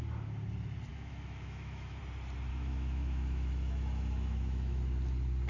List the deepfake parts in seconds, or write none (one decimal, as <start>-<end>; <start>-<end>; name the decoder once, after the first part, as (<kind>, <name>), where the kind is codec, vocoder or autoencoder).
0.9-2.0 (autoencoder, DAC-VAE); 2.5-4.8